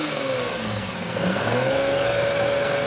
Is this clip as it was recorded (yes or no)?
no